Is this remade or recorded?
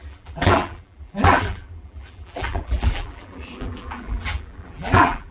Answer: remade